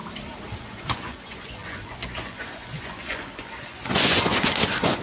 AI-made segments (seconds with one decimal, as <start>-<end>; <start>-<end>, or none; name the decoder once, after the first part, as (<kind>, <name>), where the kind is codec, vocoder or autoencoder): 0.6-5.0 (vocoder, Vocos)